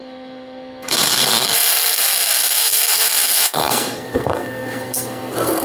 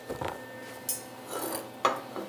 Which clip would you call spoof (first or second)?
first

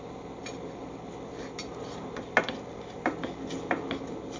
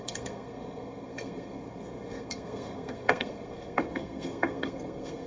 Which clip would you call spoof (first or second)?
second